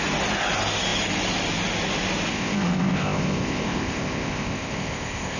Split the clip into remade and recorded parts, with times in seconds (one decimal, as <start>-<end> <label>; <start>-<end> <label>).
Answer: 0.0-2.3 recorded; 2.3-5.4 remade

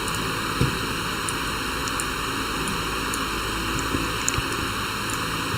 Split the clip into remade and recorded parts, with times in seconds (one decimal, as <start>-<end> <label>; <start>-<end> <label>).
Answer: 0.0-5.6 recorded

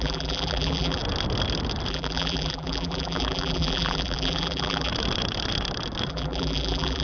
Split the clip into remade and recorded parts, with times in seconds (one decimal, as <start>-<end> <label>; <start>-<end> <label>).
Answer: 0.0-1.0 remade; 1.0-1.9 recorded; 1.9-4.9 remade; 4.9-6.1 recorded; 6.1-7.0 remade

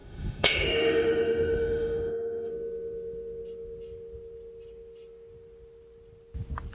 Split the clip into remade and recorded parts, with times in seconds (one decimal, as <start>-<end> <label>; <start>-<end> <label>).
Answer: 0.0-2.5 remade; 2.5-6.7 recorded

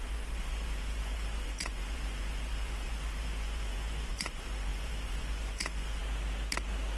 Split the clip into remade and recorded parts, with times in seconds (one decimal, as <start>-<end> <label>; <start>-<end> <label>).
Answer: 0.0-6.0 remade; 6.0-7.0 recorded

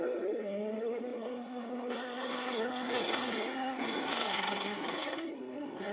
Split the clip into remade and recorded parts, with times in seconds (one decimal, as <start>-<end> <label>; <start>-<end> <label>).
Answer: 0.0-5.9 remade